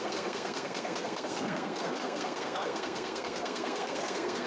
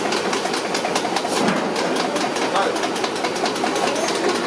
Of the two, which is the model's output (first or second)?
first